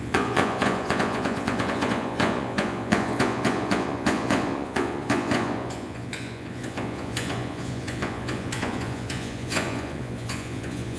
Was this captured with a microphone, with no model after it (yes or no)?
no